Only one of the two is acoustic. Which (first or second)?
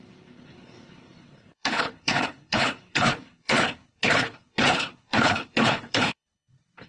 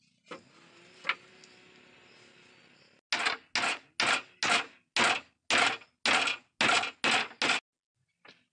second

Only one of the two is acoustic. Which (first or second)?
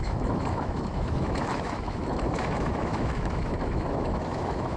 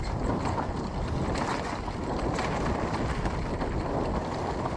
second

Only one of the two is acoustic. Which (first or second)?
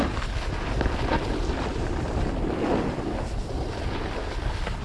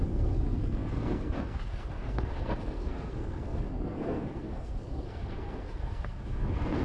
first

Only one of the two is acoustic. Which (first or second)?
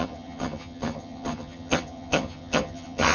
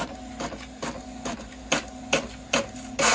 second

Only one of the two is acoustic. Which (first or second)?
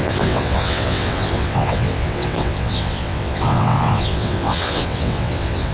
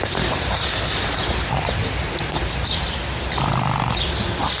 second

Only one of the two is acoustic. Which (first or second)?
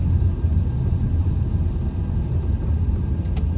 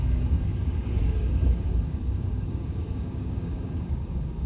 first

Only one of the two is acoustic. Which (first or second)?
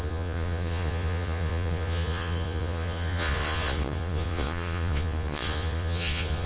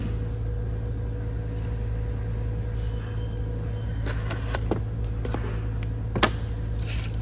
second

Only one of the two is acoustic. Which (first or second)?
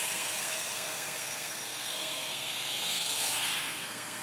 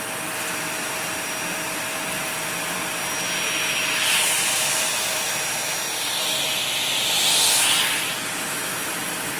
second